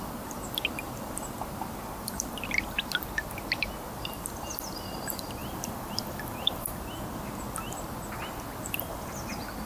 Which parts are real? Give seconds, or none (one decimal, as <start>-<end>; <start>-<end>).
0.0-5.4; 6.7-9.6